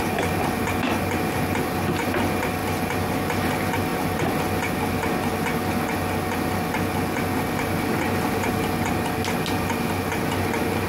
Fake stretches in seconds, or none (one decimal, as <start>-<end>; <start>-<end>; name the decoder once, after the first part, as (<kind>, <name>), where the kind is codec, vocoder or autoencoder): none